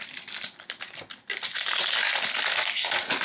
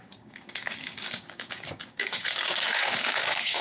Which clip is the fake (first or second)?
second